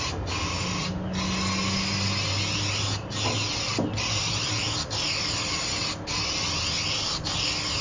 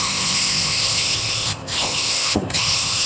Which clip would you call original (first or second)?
first